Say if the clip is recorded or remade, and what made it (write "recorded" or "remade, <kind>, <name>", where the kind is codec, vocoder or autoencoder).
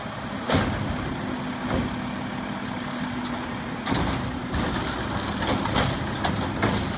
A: recorded